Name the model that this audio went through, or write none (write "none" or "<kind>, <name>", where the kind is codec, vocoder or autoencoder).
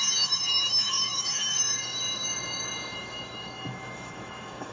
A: autoencoder, DAC-VAE